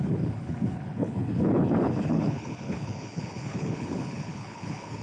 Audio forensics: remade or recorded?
remade